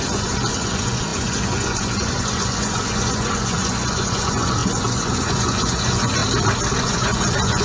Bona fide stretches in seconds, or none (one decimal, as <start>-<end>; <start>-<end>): 6.2-6.8